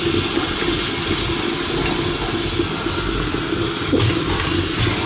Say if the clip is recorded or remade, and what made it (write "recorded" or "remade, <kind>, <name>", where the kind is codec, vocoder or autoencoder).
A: recorded